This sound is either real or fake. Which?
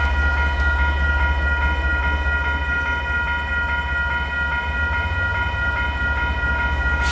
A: real